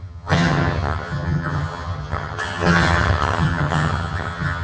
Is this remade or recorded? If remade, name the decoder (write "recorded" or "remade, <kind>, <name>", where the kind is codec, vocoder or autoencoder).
remade, vocoder, HiFi-GAN